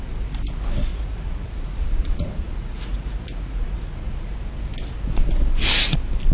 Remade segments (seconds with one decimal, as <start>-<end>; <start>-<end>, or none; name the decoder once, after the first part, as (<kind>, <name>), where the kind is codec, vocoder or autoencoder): 0.9-4.3 (vocoder, Vocos)